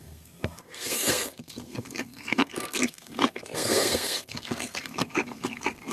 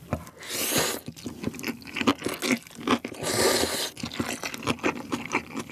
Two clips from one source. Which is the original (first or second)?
second